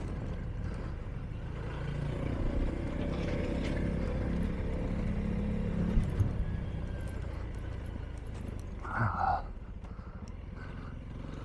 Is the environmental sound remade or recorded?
recorded